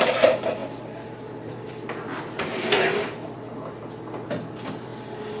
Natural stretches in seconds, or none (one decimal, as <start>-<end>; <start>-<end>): 0.0-5.4